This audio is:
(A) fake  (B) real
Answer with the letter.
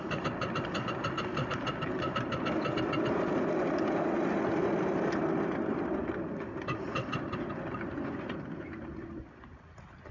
B